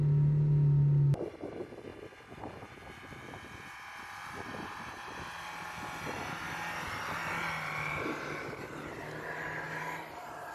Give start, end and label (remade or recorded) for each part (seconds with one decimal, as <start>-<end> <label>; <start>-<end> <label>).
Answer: 0.0-10.5 recorded